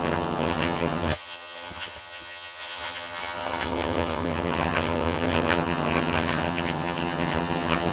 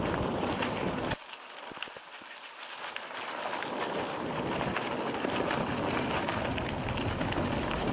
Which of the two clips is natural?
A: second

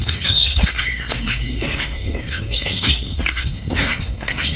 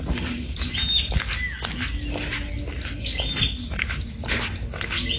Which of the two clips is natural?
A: second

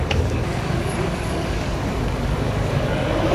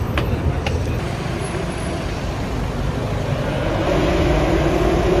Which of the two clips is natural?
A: second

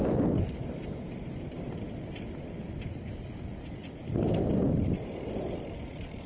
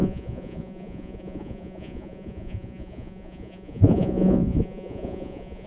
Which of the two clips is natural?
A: first